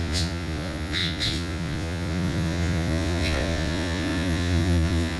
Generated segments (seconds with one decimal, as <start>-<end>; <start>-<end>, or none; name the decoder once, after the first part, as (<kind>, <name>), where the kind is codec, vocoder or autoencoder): 0.0-5.2 (vocoder, Vocos)